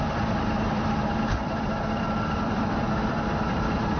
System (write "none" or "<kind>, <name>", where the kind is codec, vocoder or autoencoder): vocoder, BigVGAN v2